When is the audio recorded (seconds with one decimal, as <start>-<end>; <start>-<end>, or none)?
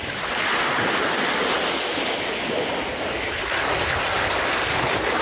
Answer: 0.0-2.7; 4.5-5.2